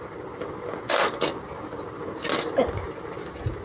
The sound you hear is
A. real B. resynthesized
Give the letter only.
A